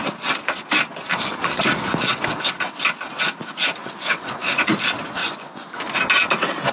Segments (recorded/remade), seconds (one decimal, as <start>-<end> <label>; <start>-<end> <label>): 0.0-1.1 recorded; 1.1-1.6 remade; 1.6-3.8 recorded; 3.8-4.7 remade; 4.7-5.2 recorded; 5.2-5.8 remade; 5.8-6.7 recorded